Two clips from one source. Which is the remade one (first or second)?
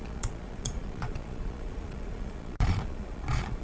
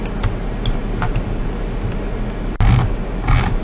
first